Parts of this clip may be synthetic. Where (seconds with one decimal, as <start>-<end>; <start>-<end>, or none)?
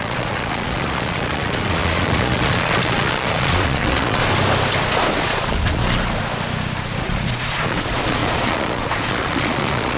0.0-4.2; 5.2-5.8; 7.0-10.0